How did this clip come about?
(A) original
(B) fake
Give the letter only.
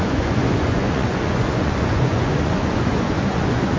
B